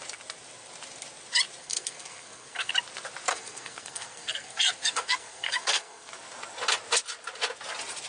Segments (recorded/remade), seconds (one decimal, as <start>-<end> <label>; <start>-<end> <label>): 0.0-1.6 recorded; 1.6-2.7 remade; 2.7-3.3 recorded; 3.3-6.1 remade; 6.1-8.1 recorded